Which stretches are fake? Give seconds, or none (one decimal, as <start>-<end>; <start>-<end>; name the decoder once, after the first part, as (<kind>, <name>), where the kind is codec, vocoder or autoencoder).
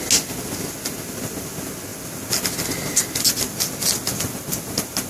none